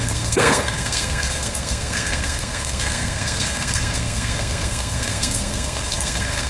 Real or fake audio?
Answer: fake